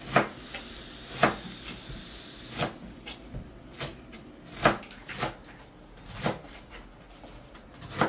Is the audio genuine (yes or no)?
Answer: yes